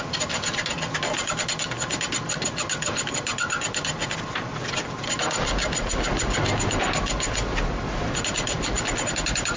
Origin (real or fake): real